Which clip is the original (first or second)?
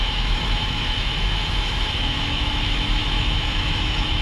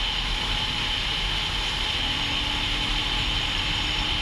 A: second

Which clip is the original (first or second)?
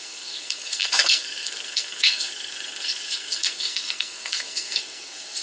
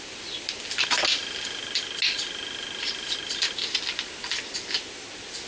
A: second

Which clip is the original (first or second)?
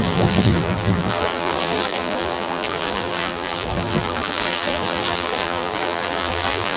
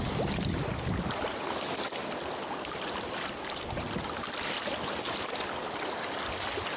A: second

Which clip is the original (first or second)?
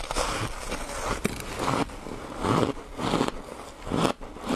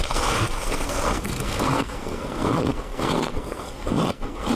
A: first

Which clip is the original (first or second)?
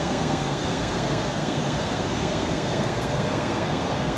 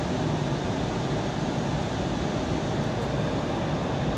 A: second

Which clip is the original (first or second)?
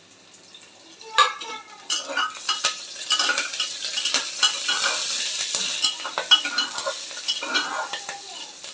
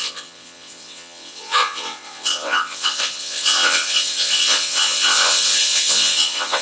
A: first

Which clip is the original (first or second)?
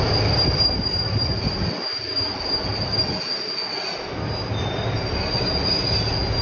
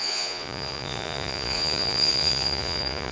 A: first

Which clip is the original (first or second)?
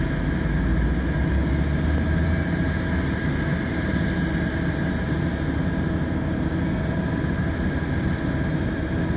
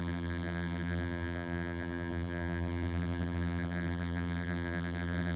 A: first